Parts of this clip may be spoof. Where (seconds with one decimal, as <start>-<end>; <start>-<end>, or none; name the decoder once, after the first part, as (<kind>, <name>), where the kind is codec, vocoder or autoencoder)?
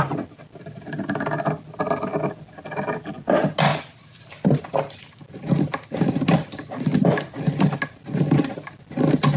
none